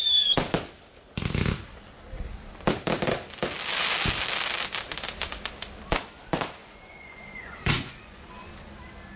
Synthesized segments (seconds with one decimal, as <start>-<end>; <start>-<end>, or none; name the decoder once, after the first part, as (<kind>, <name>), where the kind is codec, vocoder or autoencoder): 6.6-8.5 (vocoder, Vocos)

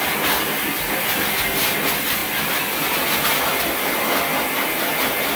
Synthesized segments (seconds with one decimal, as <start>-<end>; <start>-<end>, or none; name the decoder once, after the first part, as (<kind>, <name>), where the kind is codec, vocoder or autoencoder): none

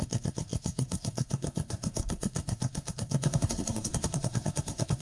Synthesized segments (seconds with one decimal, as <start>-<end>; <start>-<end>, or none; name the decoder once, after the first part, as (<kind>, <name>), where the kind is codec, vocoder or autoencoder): 0.0-5.0 (codec, SNAC)

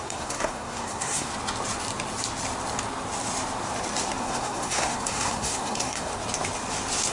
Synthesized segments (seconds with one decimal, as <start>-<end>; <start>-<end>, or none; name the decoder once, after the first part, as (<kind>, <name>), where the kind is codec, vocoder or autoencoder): 0.0-1.3 (codec, SNAC); 4.2-6.1

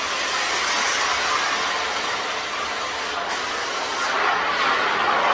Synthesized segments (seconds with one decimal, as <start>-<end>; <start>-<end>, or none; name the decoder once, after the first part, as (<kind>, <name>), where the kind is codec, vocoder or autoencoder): none

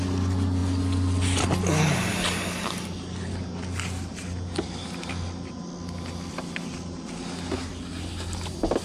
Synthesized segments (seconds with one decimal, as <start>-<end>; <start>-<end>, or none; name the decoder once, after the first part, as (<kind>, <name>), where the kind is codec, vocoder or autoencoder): none

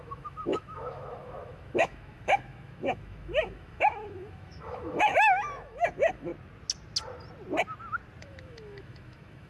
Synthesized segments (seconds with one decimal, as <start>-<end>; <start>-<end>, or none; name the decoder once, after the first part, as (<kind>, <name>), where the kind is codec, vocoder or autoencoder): 0.0-6.3 (autoencoder, DAC-VAE); 8.2-9.5

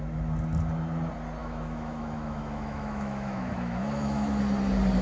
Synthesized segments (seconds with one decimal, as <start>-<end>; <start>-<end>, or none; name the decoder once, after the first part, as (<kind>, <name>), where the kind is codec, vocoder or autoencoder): 1.4-4.4 (autoencoder, DAC-VAE)